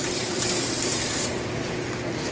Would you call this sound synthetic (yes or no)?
no